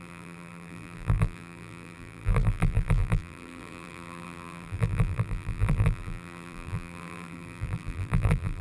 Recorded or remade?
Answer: remade